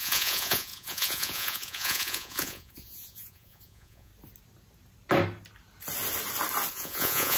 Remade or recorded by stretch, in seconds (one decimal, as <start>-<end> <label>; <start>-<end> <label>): 0.0-4.1 remade; 4.1-6.7 recorded; 6.7-7.4 remade